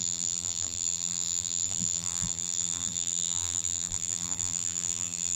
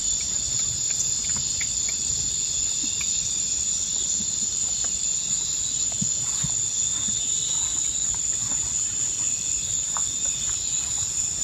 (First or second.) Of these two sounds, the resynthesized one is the first